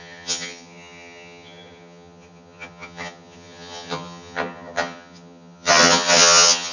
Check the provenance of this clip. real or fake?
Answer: fake